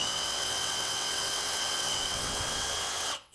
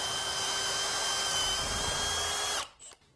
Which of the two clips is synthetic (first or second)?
first